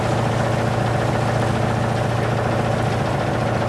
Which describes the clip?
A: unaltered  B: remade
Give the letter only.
A